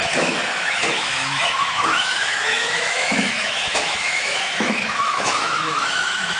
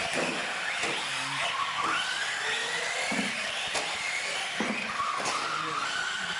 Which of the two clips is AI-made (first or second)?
first